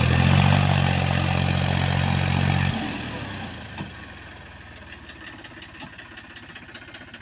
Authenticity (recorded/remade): recorded